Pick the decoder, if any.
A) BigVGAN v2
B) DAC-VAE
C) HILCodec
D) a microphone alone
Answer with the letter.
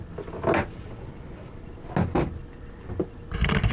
D